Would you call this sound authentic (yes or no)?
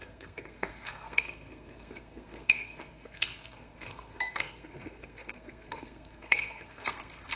no